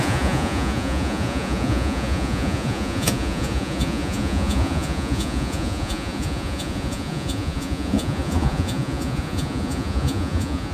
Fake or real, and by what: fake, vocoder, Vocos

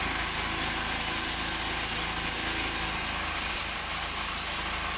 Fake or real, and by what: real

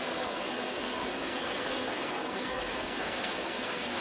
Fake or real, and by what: fake, codec, SNAC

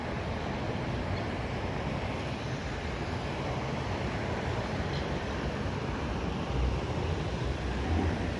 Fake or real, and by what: fake, vocoder, BigVGAN v2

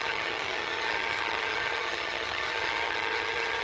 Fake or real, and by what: fake, vocoder, HiFi-GAN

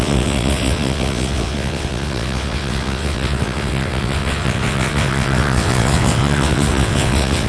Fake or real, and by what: fake, vocoder, WaveNeXt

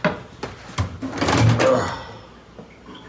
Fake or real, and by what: real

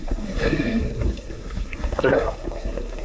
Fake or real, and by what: fake, codec, SNAC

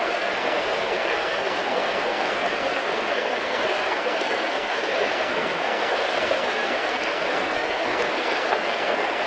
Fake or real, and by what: fake, codec, SNAC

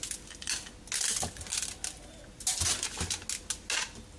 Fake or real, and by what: real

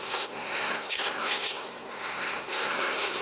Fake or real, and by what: fake, codec, SNAC